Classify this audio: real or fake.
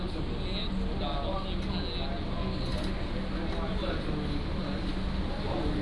real